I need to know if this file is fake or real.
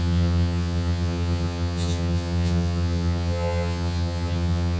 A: fake